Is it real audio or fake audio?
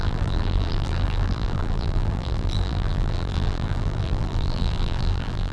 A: fake